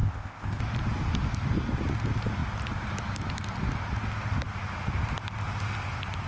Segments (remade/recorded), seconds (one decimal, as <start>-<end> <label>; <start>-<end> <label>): 0.0-0.6 remade; 0.6-6.3 recorded

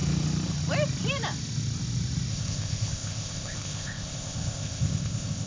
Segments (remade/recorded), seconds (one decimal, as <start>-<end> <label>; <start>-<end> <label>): 0.0-2.3 recorded; 2.3-5.5 remade

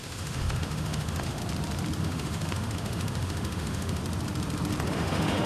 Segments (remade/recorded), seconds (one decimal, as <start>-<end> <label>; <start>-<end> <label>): 0.0-1.4 remade; 1.4-2.0 recorded; 2.0-4.0 remade; 4.0-4.9 recorded; 4.9-5.5 remade

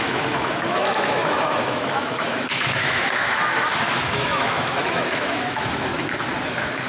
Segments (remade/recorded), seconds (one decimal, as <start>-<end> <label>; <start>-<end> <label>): 0.0-5.9 remade; 5.9-6.5 recorded; 6.5-6.9 remade

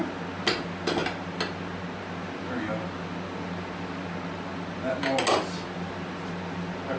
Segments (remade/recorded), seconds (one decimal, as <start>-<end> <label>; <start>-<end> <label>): 0.0-7.0 recorded

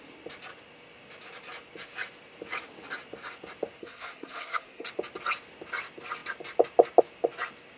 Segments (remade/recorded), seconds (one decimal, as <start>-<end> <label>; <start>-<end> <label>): 0.0-3.8 recorded; 3.8-4.9 remade; 4.9-7.8 recorded

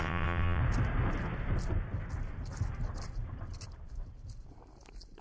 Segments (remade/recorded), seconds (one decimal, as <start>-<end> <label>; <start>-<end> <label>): 0.0-0.6 remade; 0.6-5.2 recorded

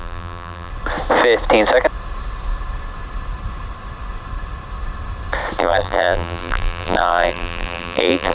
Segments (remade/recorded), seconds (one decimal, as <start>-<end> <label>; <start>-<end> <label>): 0.0-0.7 remade; 0.7-5.6 recorded; 5.6-8.3 remade